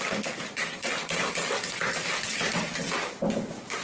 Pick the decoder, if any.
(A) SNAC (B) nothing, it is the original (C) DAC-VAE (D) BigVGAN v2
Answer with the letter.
B